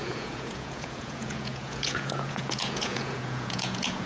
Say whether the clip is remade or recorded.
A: remade